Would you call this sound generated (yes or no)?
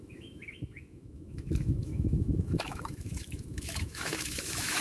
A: yes